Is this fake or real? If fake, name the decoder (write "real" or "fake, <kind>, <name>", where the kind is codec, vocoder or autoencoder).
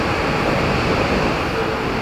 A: fake, vocoder, BigVGAN v2